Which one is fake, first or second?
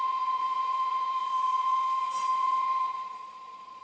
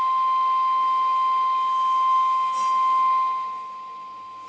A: first